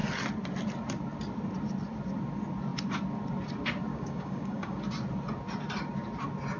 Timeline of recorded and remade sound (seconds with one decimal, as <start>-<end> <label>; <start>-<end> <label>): 0.0-3.9 recorded; 3.9-4.8 remade; 4.8-6.6 recorded